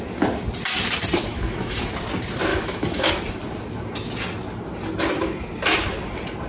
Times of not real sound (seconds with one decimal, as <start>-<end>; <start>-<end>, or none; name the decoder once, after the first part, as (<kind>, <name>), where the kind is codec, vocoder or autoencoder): 1.3-1.8 (autoencoder, DAC-VAE); 2.5-3.1